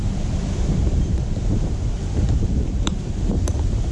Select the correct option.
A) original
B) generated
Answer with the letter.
B